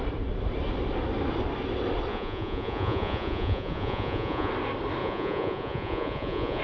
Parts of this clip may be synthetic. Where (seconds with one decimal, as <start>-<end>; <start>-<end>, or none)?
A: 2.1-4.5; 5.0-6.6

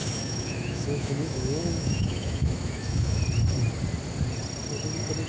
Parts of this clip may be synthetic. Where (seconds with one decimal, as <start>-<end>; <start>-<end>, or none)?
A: 0.0-3.2

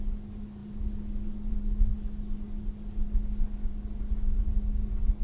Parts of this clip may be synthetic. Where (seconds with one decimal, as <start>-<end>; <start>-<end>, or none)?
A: none

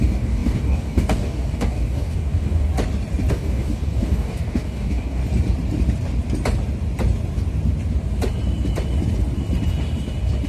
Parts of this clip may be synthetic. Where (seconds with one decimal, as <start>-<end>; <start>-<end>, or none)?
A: 0.0-2.7; 3.3-5.2

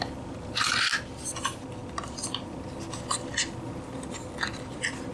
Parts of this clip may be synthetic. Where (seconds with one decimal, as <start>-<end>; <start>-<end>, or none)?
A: none

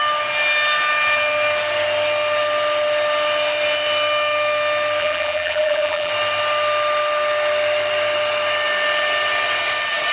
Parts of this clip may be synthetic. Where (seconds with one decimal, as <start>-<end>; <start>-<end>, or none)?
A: 5.0-6.1

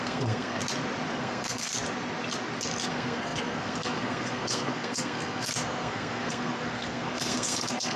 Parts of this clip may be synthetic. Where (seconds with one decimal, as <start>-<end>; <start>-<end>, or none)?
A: 0.0-0.6; 1.1-1.7; 2.9-8.0

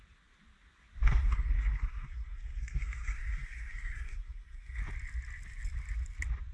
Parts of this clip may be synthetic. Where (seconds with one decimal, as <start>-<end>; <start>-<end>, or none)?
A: 1.2-4.8